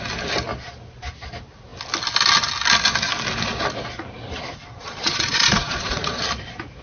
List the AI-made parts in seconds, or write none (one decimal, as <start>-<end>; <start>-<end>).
4.7-6.2

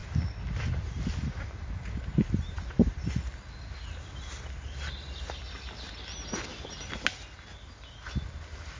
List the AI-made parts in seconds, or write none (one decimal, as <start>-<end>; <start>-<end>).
none

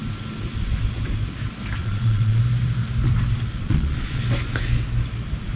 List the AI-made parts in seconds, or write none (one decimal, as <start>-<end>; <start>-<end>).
1.8-2.4; 3.6-4.2

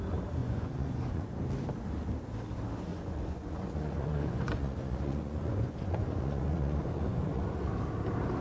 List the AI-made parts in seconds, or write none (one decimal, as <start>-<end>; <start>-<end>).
0.4-1.4; 2.9-7.7